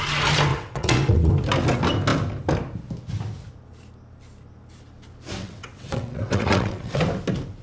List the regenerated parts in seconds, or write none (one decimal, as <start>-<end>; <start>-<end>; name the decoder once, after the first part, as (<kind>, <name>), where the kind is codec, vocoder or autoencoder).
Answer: 0.5-1.3 (vocoder, WaveNeXt); 5.4-7.0